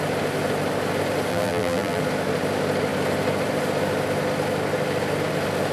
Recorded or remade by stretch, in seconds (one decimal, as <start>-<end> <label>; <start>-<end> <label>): 0.0-1.3 recorded; 1.3-2.0 remade; 2.0-5.7 recorded